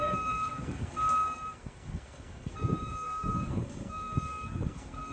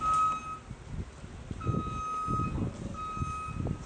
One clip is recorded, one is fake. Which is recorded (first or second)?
second